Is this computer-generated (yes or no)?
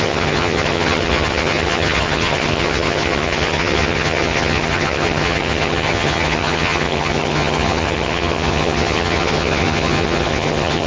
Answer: yes